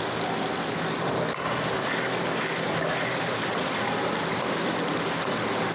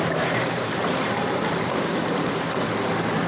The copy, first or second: second